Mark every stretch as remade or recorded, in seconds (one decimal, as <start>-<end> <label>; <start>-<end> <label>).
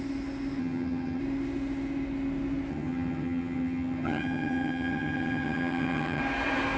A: 0.0-0.6 recorded; 0.6-1.2 remade; 1.2-2.7 recorded; 2.7-6.2 remade; 6.2-6.8 recorded